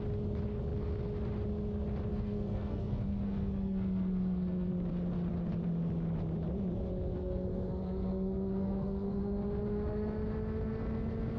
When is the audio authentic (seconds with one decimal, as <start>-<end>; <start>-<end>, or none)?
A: 0.0-2.1; 4.7-7.1; 9.2-11.4